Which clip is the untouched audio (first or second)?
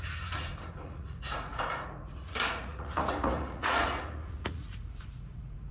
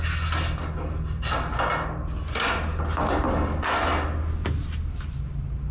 second